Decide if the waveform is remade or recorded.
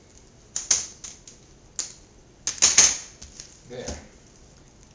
recorded